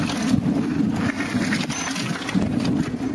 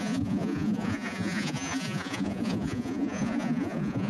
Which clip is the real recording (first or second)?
first